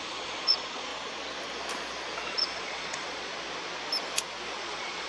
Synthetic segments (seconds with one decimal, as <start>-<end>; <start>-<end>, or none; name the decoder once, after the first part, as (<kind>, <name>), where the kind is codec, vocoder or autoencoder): 0.0-0.9 (vocoder, Vocos); 2.3-3.3; 4.6-5.1